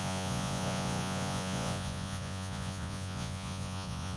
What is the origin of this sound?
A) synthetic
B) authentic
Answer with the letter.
A